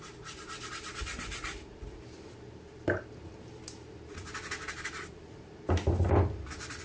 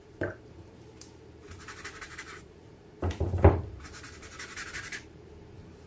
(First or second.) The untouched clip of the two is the first